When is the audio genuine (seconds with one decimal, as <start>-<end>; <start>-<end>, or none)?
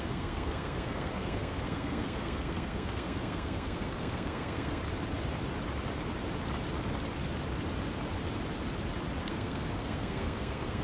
4.8-9.2